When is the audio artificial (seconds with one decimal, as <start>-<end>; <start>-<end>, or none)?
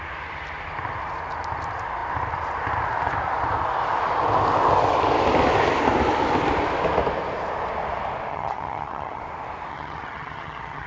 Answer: 8.3-9.2; 9.7-10.9